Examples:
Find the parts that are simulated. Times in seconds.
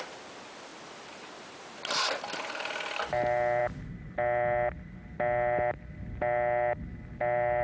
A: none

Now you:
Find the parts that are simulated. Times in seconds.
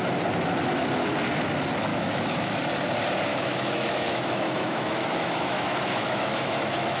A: 1.9-2.6 (autoencoder, DAC-VAE); 3.3-7.0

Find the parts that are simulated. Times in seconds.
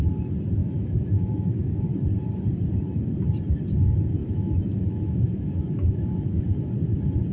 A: 0.6-1.8 (autoencoder, DAC-VAE); 4.2-6.4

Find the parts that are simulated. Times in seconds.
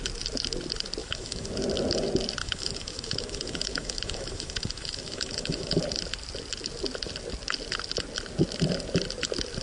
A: 1.0-1.5 (autoencoder, DAC-VAE); 2.4-5.8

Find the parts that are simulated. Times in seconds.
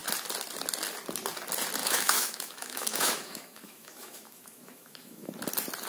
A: 1.8-5.3 (autoencoder, DAC-VAE)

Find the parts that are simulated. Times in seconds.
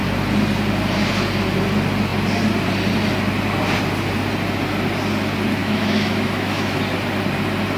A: 5.6-6.8 (autoencoder, DAC-VAE)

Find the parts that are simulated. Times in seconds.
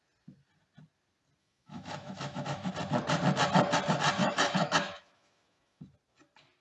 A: 1.4-2.7 (autoencoder, DAC-VAE); 4.2-5.8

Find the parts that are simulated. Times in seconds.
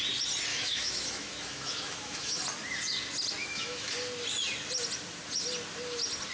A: 0.5-2.4 (autoencoder, DAC-VAE); 3.4-3.9